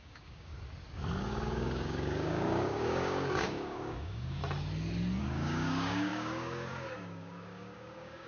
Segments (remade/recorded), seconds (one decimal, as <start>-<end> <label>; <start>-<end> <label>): 0.0-0.5 remade; 0.5-1.2 recorded; 1.2-4.4 remade; 4.4-5.2 recorded; 5.2-8.3 remade